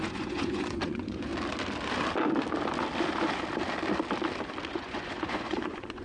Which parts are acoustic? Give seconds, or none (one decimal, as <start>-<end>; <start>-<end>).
1.3-4.7